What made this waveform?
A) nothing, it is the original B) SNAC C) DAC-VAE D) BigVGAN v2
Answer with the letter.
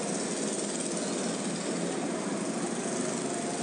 A